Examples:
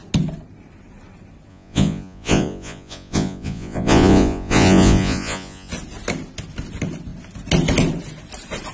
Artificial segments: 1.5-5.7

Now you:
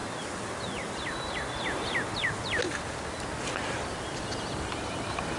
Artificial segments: none